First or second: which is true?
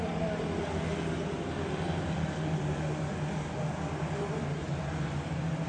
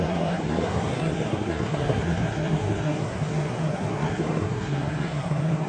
first